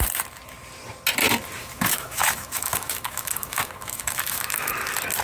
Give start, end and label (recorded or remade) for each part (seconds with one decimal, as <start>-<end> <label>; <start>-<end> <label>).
0.0-1.6 recorded; 1.6-4.7 remade; 4.7-5.2 recorded

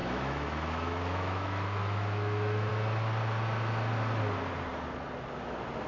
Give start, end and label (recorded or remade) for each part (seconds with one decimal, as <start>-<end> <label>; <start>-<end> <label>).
0.0-2.7 remade; 2.7-5.9 recorded

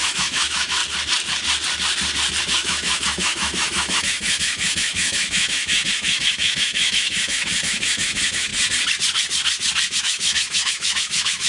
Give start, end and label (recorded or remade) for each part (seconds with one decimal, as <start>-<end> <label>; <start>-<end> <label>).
0.0-0.8 remade; 0.8-2.4 recorded; 2.4-8.5 remade; 8.5-10.0 recorded; 10.0-11.5 remade

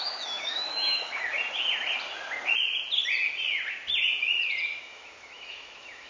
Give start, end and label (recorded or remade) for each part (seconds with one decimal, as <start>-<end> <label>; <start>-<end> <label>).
0.0-1.3 remade; 1.3-4.8 recorded; 4.8-6.1 remade